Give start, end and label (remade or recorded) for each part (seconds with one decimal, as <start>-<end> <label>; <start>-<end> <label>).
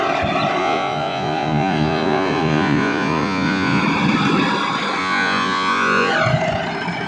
0.0-0.6 recorded; 0.6-3.8 remade; 3.8-5.0 recorded; 5.0-6.1 remade; 6.1-7.1 recorded